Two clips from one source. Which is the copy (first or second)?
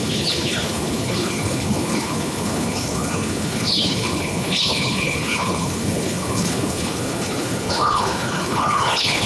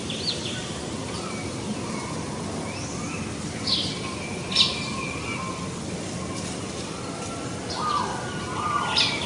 first